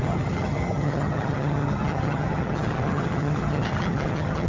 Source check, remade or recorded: remade